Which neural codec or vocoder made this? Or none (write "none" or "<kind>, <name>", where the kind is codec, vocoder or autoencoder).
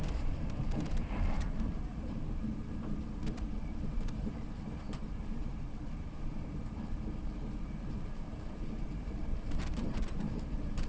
vocoder, BigVGAN v2